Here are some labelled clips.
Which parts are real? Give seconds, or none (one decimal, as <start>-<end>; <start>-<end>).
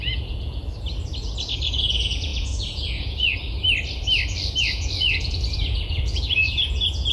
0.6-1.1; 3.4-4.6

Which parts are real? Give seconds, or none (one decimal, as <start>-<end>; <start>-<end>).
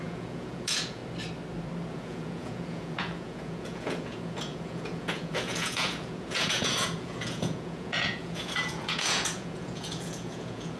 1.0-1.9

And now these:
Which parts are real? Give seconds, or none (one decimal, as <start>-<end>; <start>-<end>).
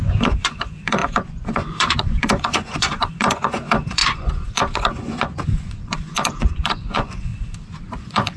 7.3-8.0